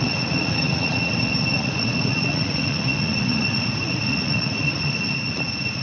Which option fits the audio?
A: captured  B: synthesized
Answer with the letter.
B